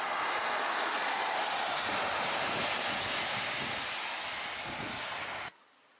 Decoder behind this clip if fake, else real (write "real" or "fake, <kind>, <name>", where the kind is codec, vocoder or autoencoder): real